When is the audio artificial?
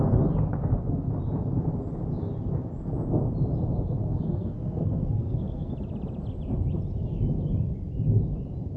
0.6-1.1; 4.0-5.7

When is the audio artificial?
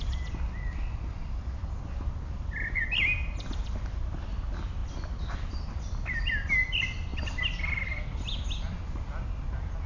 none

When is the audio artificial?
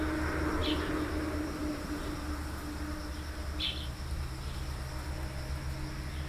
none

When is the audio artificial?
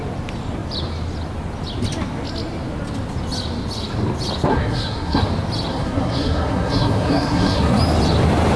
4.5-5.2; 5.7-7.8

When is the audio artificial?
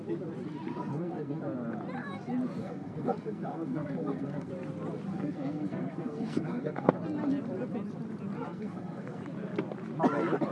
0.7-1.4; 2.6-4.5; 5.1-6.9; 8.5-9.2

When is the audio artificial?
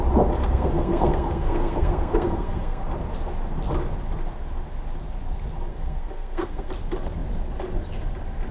0.4-2.8; 5.7-6.7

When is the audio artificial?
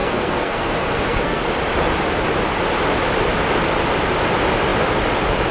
0.0-1.4